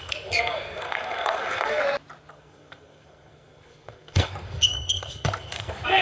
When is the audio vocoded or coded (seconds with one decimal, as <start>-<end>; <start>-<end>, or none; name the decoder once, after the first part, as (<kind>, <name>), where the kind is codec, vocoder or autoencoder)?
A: 0.0-1.8 (codec, SNAC); 2.3-6.0